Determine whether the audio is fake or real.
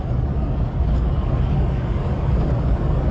fake